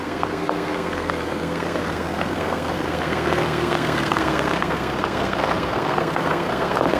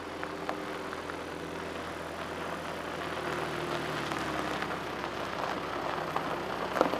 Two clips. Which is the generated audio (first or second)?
first